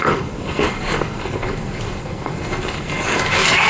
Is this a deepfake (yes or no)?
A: yes